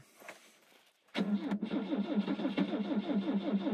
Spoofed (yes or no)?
no